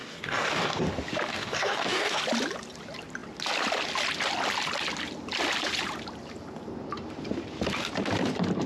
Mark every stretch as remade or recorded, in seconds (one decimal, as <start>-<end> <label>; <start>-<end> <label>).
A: 0.0-0.9 remade; 0.9-1.3 recorded; 1.3-2.2 remade; 2.2-8.7 recorded